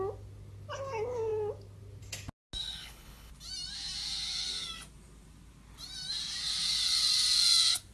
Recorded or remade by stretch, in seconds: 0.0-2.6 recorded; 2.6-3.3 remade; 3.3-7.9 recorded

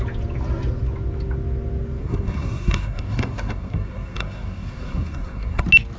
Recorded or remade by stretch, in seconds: 0.0-2.0 recorded; 2.0-5.6 remade; 5.6-6.0 recorded

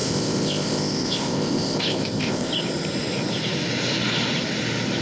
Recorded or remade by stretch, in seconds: 0.0-2.5 remade; 2.5-5.0 recorded

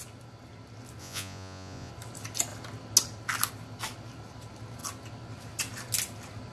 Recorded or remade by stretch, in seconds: 0.0-1.0 recorded; 1.0-1.9 remade; 1.9-6.5 recorded

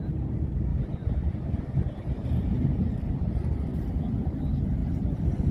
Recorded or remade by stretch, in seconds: 0.0-5.5 recorded

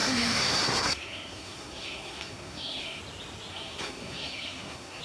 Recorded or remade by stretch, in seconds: 0.0-3.0 remade; 3.0-3.5 recorded; 3.5-5.0 remade

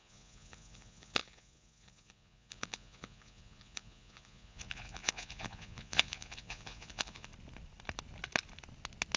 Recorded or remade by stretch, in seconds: 0.0-7.3 remade; 7.3-9.2 recorded